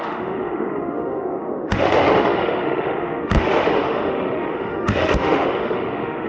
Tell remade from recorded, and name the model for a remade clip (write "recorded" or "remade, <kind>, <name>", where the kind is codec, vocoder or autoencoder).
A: remade, autoencoder, DAC-VAE